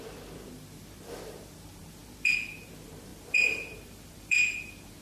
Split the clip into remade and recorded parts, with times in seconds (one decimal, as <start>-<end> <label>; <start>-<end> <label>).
0.0-5.0 remade